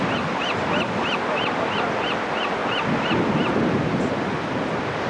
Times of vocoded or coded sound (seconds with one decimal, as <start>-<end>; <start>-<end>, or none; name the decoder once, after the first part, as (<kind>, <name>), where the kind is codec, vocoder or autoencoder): none